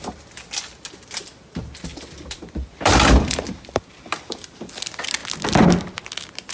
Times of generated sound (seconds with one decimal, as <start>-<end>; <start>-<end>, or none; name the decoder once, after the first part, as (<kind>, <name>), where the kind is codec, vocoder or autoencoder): 1.9-4.6 (vocoder, BigVGAN v2)